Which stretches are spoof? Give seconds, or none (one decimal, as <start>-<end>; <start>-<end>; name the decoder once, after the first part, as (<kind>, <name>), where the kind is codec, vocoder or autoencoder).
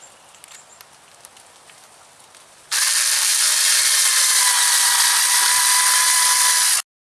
3.3-4.5 (vocoder, BigVGAN v2); 5.6-6.5